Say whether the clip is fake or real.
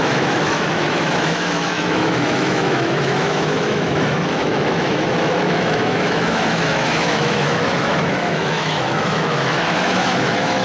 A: fake